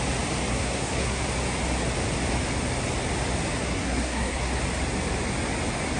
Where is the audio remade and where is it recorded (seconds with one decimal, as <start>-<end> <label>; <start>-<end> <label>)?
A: 0.0-0.5 recorded; 0.5-1.2 remade; 1.2-3.6 recorded; 3.6-4.6 remade; 4.6-6.0 recorded